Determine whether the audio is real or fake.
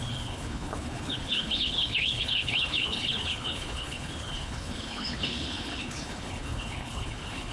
fake